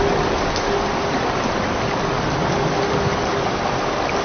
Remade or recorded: recorded